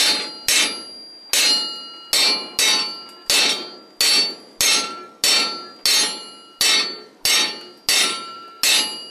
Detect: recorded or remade recorded